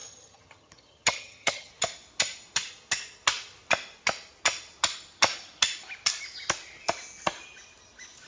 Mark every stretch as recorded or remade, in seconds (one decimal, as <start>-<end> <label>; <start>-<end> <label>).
0.0-1.7 remade; 1.7-8.3 recorded